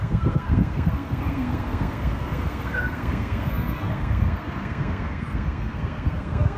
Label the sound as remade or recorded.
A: remade